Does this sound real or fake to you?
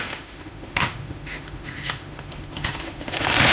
fake